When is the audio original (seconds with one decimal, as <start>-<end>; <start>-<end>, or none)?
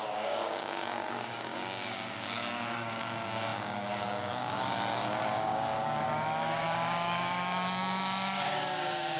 none